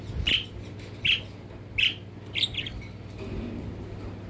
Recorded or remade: recorded